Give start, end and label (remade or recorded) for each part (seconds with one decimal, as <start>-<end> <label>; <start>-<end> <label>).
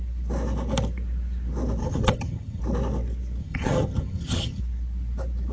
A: 0.0-1.8 recorded; 1.8-2.6 remade; 2.6-3.4 recorded; 3.4-4.6 remade; 4.6-5.5 recorded